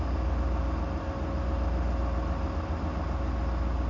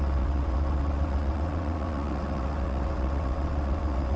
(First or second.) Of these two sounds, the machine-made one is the second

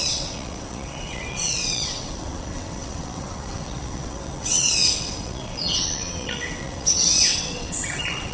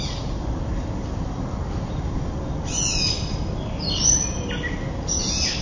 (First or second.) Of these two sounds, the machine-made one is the first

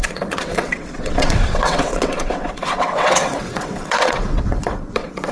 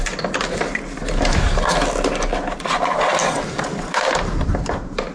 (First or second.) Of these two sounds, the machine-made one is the first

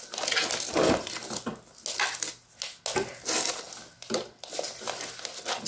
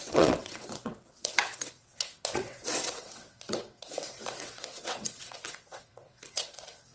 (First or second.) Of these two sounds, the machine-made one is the second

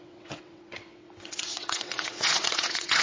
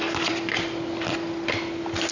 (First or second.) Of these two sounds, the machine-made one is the first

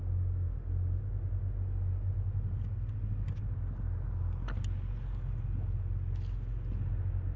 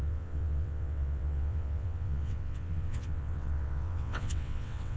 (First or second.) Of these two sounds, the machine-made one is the second